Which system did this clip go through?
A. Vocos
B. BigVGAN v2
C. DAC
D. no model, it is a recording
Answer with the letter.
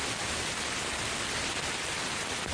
D